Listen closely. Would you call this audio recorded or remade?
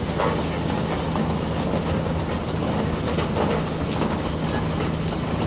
recorded